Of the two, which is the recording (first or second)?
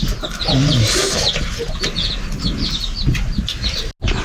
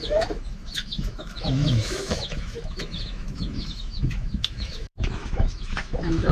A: first